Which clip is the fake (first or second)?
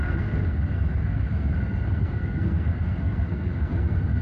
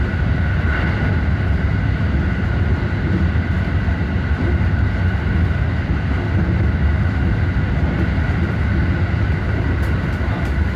first